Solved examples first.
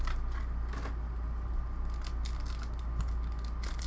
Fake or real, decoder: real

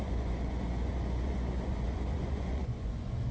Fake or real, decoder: fake, vocoder, Vocos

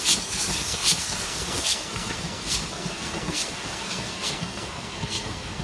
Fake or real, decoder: fake, codec, SNAC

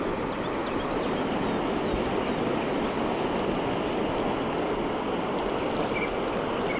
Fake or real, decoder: real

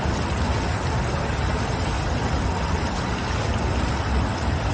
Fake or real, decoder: fake, vocoder, BigVGAN v2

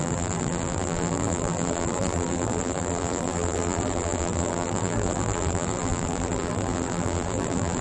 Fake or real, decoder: fake, vocoder, BigVGAN v2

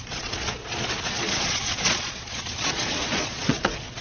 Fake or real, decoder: fake, vocoder, Vocos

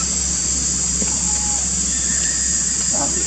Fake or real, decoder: real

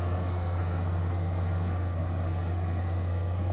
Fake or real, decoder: fake, codec, SNAC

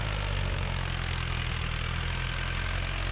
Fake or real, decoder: real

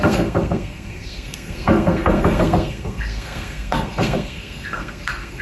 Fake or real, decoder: fake, codec, SNAC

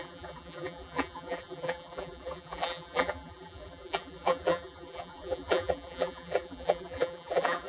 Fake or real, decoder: fake, vocoder, BigVGAN v2